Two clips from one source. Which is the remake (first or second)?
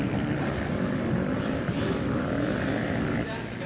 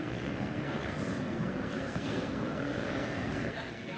second